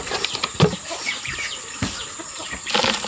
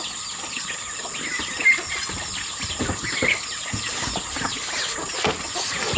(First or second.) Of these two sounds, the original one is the second